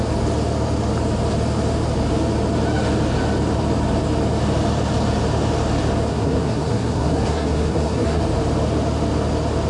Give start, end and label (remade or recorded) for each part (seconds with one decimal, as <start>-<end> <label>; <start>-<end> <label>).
0.0-6.1 recorded; 6.1-8.2 remade; 8.2-9.7 recorded